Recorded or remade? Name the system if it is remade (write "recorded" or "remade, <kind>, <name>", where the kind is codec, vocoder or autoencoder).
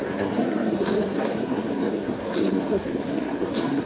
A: remade, codec, SNAC